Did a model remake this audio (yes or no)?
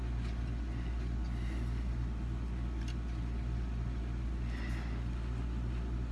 no